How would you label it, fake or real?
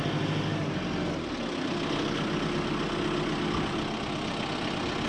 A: real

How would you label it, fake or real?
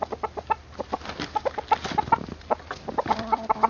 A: real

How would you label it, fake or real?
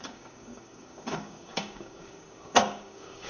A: fake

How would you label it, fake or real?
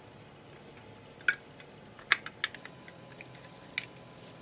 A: real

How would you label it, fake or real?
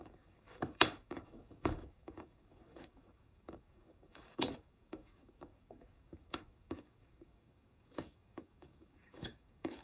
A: fake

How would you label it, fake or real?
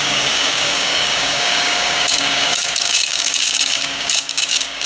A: fake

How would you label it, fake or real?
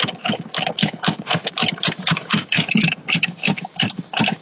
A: fake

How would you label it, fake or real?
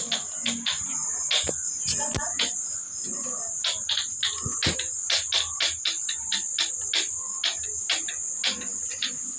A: real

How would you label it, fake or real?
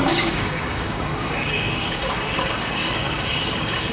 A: fake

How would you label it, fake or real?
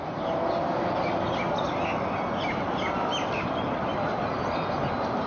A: real